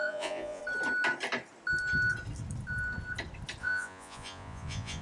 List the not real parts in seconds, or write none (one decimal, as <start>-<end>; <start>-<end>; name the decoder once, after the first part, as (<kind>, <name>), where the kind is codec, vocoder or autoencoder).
0.0-0.6 (vocoder, Vocos); 3.6-5.0